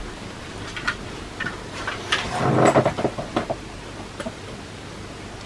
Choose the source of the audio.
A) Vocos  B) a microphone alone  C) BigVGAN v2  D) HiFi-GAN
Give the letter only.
B